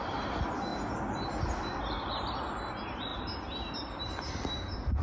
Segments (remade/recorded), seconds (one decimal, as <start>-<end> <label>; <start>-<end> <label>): 0.0-5.0 recorded